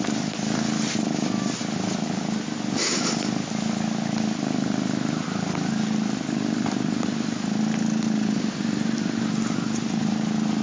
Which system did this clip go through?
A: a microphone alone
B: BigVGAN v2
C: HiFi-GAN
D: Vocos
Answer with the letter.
A